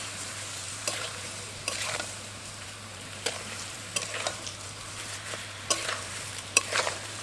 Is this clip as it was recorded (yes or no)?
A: no